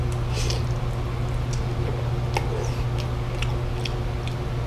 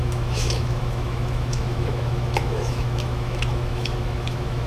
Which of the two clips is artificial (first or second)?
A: second